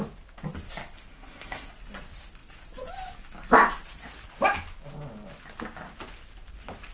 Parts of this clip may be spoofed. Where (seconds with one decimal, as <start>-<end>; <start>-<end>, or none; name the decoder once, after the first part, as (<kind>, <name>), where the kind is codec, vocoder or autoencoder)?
1.1-1.7 (codec, SNAC)